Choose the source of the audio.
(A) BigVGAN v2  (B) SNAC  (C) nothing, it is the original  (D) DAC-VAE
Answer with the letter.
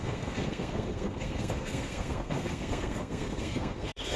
B